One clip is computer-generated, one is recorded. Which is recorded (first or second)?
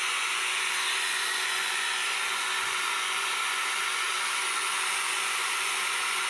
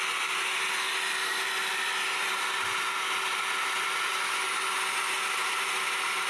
second